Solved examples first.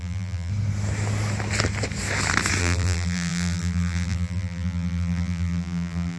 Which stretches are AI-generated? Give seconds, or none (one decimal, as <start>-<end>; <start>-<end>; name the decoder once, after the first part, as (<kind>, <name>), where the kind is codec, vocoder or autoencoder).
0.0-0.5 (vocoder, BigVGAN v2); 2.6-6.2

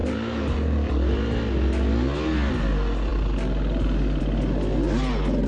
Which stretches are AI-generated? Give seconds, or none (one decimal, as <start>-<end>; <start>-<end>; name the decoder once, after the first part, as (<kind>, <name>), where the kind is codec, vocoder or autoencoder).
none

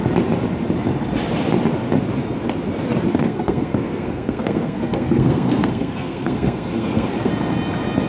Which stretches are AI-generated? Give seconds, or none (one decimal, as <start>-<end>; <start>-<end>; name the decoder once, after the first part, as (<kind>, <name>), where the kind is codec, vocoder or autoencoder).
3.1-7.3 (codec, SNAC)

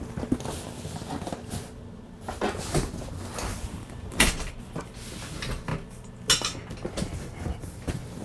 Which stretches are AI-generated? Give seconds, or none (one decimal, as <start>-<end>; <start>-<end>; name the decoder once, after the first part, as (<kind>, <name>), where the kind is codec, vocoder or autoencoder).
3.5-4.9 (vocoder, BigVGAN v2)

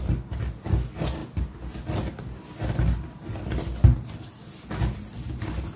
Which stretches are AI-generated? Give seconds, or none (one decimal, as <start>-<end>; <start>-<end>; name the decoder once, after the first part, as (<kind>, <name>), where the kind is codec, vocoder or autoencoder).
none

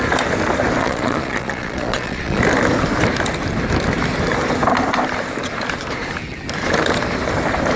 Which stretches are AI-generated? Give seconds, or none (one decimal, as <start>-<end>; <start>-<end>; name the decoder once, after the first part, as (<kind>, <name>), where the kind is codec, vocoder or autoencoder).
0.8-2.4 (vocoder, Vocos)

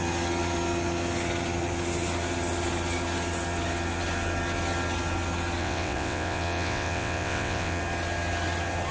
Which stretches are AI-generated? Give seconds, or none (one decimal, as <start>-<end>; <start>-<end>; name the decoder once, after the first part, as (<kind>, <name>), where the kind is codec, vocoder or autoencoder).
5.6-7.8 (vocoder, WaveNeXt)